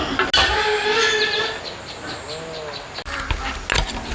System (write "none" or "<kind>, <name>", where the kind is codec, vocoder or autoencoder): none